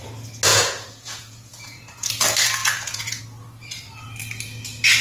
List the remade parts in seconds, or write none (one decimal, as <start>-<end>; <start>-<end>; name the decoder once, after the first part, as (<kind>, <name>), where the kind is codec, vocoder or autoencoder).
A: 0.5-2.1 (vocoder, Vocos); 2.6-3.2